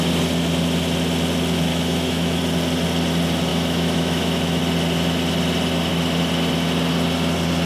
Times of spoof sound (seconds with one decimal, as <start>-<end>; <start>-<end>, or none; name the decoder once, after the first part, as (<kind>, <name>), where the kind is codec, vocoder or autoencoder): 1.7-2.4 (autoencoder, DAC-VAE); 3.5-4.6